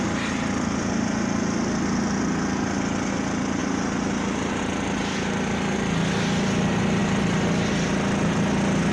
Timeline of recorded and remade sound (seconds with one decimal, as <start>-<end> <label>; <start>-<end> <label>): 0.0-8.9 recorded